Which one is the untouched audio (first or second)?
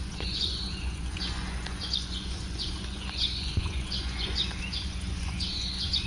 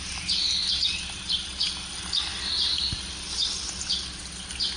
second